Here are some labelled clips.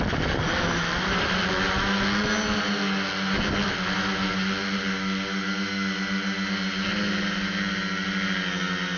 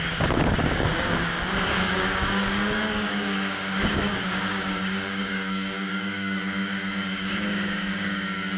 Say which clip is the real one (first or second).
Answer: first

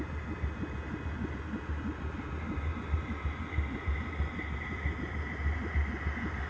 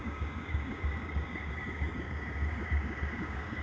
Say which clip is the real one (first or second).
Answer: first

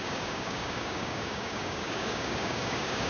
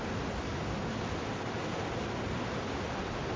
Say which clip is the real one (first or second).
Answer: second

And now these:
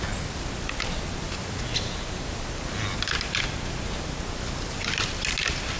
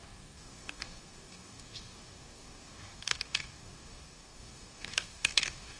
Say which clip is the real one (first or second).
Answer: first